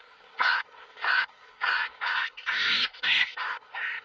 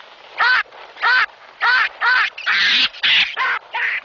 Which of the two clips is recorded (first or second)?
second